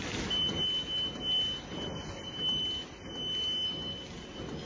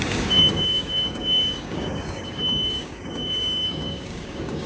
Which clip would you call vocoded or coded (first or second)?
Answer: second